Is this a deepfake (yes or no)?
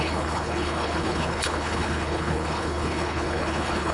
yes